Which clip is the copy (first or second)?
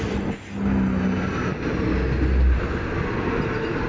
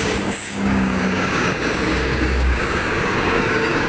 second